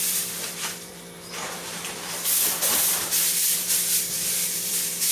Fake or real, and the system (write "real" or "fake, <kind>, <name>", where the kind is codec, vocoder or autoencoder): fake, vocoder, BigVGAN v2